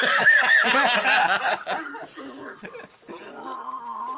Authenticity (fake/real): real